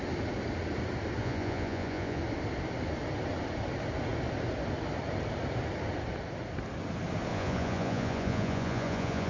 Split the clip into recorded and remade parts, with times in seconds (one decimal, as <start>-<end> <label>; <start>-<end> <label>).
0.0-1.2 recorded; 1.2-2.2 remade; 2.2-7.3 recorded; 7.3-9.3 remade